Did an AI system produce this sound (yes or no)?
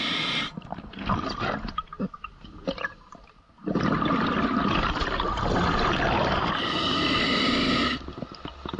no